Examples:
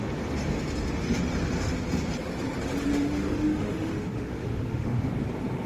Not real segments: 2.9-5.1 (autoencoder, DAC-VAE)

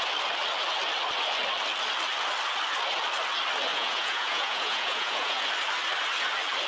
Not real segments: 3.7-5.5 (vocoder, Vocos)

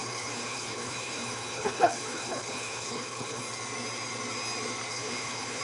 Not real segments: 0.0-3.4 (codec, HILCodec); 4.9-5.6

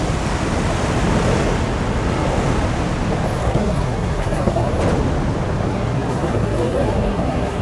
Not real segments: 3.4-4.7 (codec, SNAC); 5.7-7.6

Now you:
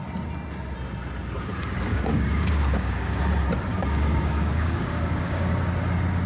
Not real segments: 1.9-3.2 (codec, DAC); 3.7-5.5

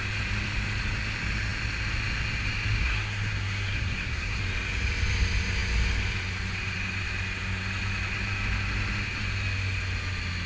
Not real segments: 2.8-4.4 (codec, SNAC)

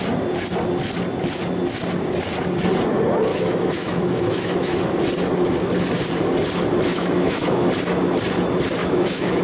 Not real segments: 3.3-4.8 (autoencoder, DAC-VAE); 6.9-7.7; 8.8-9.4

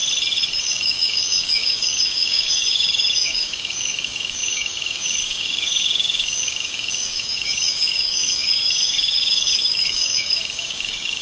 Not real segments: 0.6-11.2 (codec, DAC)